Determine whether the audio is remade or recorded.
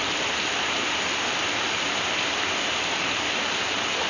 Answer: recorded